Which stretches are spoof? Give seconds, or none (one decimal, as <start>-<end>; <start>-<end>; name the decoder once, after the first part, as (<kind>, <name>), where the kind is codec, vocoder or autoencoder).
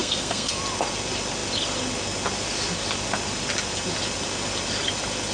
0.0-0.6 (codec, SNAC)